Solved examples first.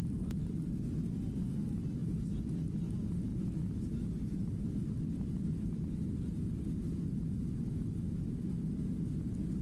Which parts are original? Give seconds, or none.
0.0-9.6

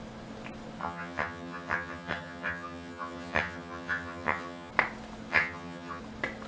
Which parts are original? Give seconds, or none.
0.0-0.8; 4.7-5.3; 6.0-6.5